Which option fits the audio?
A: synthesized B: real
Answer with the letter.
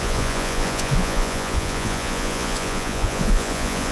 A